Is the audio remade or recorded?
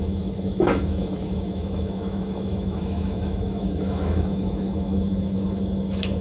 remade